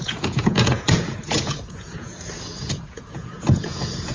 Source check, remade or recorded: remade